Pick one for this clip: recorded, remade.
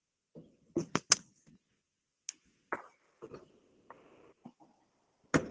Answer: recorded